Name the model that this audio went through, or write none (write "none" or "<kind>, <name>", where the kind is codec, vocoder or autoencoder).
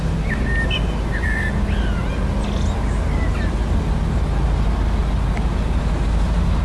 none